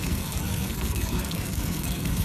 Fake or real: fake